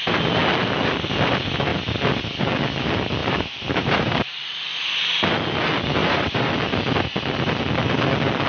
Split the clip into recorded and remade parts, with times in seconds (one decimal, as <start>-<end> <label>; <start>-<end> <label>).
0.0-3.2 recorded; 3.2-4.6 remade; 4.6-6.0 recorded; 6.0-6.5 remade; 6.5-8.5 recorded